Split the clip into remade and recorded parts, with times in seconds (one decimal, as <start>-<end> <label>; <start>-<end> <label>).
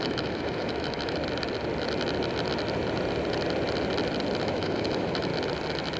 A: 0.0-1.2 remade; 1.2-4.4 recorded; 4.4-5.3 remade; 5.3-6.0 recorded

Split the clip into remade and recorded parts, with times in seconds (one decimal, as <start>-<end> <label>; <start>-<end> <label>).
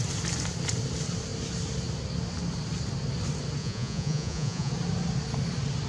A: 0.0-3.6 recorded; 3.6-4.7 remade; 4.7-5.9 recorded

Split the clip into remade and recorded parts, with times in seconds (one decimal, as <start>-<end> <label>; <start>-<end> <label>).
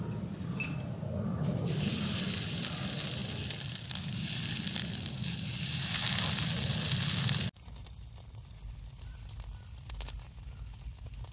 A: 0.0-11.3 recorded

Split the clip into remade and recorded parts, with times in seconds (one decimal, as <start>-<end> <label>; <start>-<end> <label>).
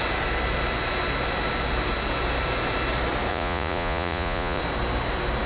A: 0.0-3.3 recorded; 3.3-4.6 remade; 4.6-5.5 recorded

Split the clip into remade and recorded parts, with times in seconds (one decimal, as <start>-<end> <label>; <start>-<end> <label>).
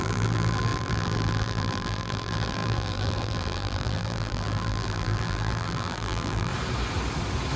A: 0.0-6.5 remade; 6.5-7.6 recorded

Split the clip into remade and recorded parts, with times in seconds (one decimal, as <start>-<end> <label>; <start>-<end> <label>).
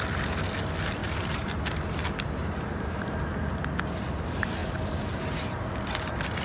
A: 0.0-1.0 recorded; 1.0-1.7 remade; 1.7-2.4 recorded; 2.4-3.5 remade; 3.5-4.6 recorded; 4.6-5.3 remade; 5.3-6.4 recorded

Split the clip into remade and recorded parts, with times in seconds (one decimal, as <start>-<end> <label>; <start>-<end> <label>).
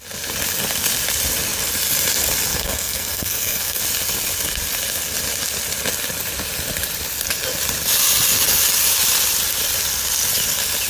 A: 0.0-2.5 recorded; 2.5-3.8 remade; 3.8-10.9 recorded